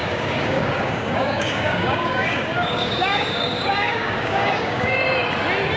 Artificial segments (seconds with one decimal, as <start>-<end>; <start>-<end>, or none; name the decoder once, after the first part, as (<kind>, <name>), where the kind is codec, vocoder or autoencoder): 0.0-5.0 (codec, DAC)